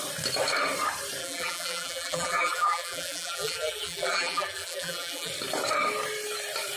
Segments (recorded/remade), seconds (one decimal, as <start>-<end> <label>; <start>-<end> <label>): 0.0-1.2 recorded; 1.2-5.3 remade; 5.3-6.8 recorded